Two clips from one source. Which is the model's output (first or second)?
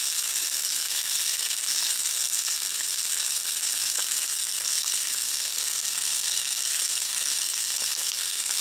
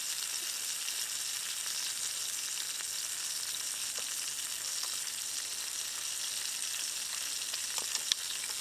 first